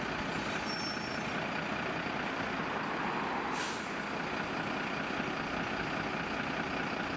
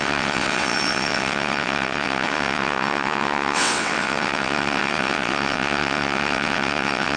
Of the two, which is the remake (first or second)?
second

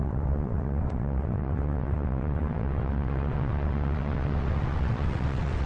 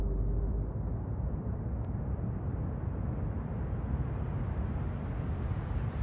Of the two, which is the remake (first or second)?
first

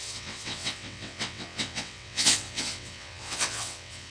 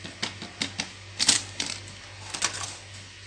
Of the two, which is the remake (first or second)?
first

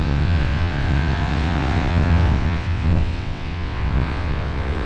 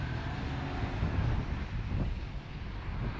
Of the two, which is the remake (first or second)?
first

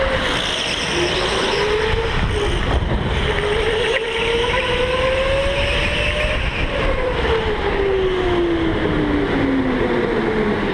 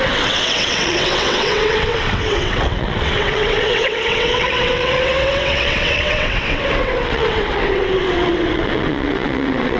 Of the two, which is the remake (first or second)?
second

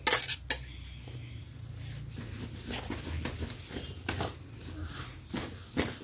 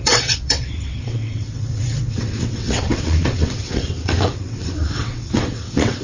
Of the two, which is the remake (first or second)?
second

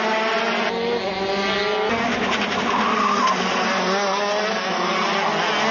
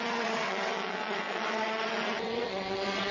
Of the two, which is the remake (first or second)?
second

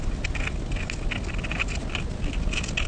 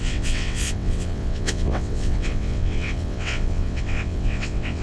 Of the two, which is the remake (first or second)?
second